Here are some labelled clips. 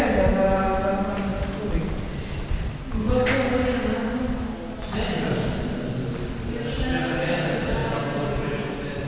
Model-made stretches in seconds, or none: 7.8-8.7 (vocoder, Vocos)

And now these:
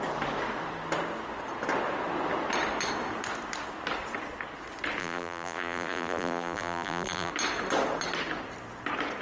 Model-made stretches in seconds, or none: 5.0-7.3 (vocoder, BigVGAN v2)

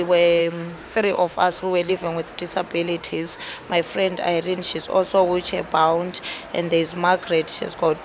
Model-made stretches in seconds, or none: 0.4-1.9 (autoencoder, DAC-VAE); 3.0-3.7

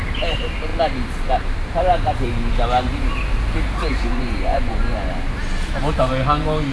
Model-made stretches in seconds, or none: 4.1-5.1 (vocoder, Vocos)

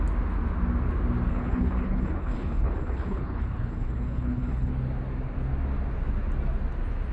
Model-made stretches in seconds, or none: 1.3-4.7 (codec, HILCodec)

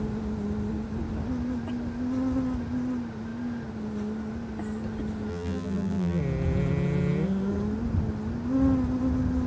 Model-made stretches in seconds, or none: 5.3-6.2 (vocoder, BigVGAN v2)